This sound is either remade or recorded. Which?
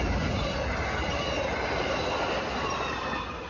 recorded